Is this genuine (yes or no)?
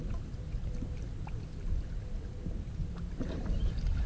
yes